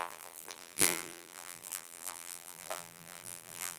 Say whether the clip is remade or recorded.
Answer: remade